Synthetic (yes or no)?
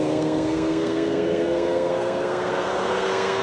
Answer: yes